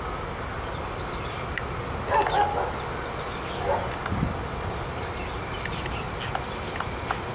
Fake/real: real